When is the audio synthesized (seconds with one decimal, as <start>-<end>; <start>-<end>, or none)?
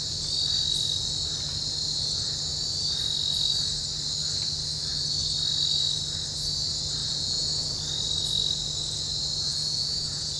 7.0-7.7; 9.5-10.4